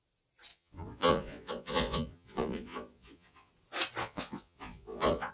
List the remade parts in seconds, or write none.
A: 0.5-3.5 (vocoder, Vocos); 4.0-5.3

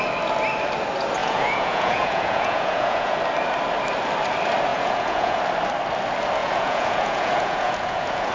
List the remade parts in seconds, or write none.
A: 1.2-3.2 (vocoder, Vocos); 4.7-5.4; 6.4-8.3

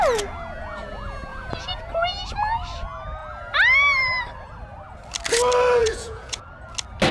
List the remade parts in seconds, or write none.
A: 1.3-1.8 (vocoder, Vocos); 5.8-6.4

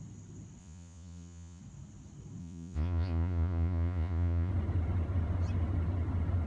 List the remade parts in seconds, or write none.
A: 0.6-1.6 (vocoder, Vocos); 2.4-4.5

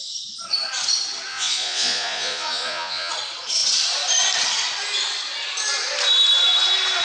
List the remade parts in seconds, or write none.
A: 1.3-3.1 (vocoder, Vocos)

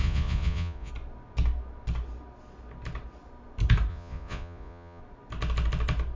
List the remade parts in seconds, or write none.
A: 0.0-0.9 (vocoder, Vocos); 3.9-5.0